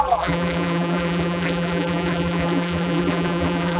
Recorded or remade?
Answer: remade